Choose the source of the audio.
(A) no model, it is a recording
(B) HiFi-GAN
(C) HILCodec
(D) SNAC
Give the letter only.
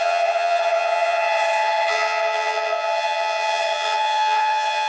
B